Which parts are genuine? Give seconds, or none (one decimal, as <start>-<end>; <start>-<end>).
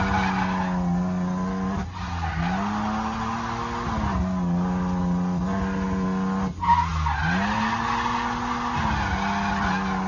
0.0-10.1